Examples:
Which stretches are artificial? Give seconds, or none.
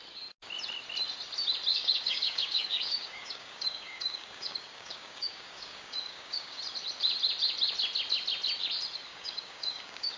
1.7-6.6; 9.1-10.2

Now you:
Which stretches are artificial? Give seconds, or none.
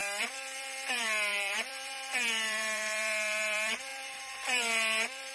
0.0-5.3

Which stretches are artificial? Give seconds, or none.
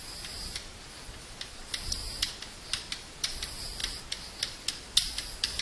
none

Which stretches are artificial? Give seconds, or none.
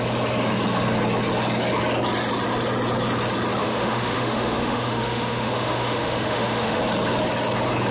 3.6-6.8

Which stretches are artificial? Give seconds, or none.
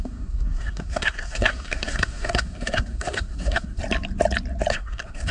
0.0-3.8; 4.7-5.3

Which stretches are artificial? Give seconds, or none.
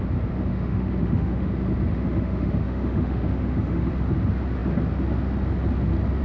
0.5-1.5; 1.9-3.9